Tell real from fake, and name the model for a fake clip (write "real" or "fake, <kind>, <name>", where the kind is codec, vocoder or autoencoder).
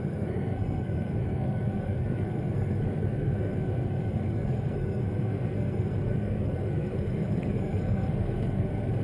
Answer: fake, codec, SNAC